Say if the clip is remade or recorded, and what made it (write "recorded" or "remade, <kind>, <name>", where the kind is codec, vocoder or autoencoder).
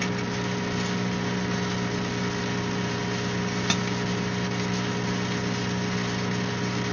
recorded